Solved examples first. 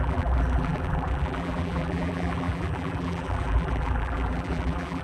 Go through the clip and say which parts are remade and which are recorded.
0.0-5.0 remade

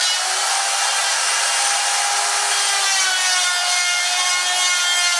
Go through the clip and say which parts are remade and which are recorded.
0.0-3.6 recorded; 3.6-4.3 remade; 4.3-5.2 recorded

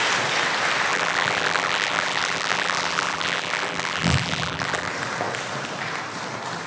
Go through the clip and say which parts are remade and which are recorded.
0.0-0.9 recorded; 0.9-4.9 remade; 4.9-6.7 recorded